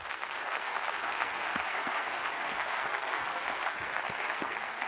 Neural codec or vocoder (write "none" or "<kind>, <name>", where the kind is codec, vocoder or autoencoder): codec, SNAC